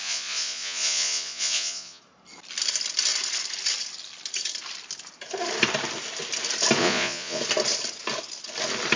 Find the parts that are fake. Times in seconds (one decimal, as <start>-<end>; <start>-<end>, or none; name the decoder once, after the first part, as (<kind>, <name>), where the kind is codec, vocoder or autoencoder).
0.0-2.0 (vocoder, Vocos); 6.8-7.4